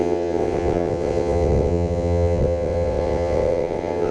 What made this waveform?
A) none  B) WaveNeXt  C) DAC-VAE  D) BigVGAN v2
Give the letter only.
B